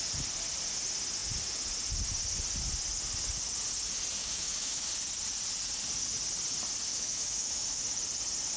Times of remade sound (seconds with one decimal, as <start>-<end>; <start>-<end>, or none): 4.2-4.9; 6.9-7.8